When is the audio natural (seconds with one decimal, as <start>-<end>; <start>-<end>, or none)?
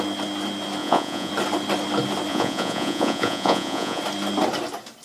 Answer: 0.0-0.8; 1.3-2.3; 4.0-5.0